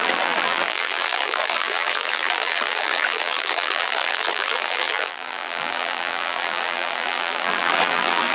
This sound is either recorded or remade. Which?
remade